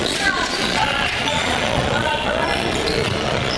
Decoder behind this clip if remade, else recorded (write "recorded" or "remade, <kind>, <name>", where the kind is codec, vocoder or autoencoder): remade, vocoder, Vocos